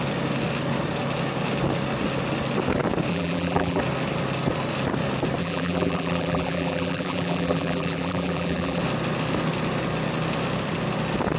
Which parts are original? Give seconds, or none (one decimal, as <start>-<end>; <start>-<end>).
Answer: 0.0-3.1; 3.8-5.4; 8.8-11.4